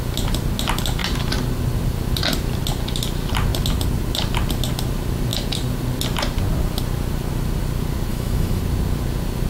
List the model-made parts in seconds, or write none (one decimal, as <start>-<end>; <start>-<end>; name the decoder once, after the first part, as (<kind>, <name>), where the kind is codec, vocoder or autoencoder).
8.1-8.6 (autoencoder, DAC-VAE)